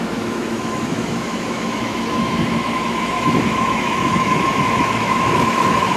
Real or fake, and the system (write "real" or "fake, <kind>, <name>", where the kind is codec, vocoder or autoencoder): fake, autoencoder, DAC-VAE